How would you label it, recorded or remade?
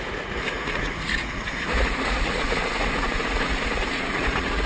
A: remade